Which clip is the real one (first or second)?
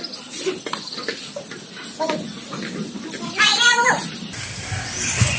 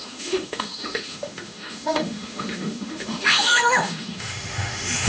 first